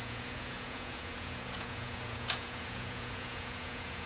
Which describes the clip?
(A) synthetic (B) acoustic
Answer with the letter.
A